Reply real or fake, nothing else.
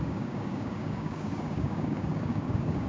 fake